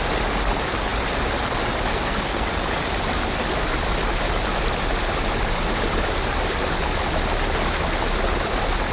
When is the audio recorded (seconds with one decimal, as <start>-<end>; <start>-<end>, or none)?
0.0-1.9; 2.6-8.9